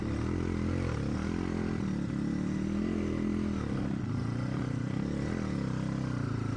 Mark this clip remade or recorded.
recorded